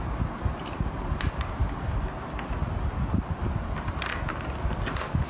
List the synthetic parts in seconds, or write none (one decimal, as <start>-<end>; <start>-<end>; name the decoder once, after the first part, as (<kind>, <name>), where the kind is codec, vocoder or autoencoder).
0.0-1.6 (vocoder, BigVGAN v2); 4.8-5.3